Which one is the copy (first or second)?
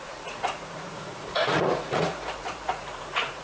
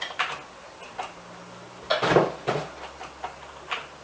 first